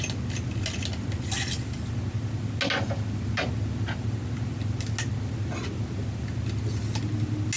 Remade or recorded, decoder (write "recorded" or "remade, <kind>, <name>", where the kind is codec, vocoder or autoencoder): recorded